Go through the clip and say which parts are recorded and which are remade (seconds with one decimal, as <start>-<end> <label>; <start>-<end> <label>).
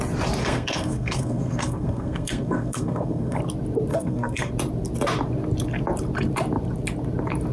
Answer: 0.0-0.4 recorded; 0.4-3.4 remade; 3.4-3.9 recorded; 3.9-4.5 remade; 4.5-7.5 recorded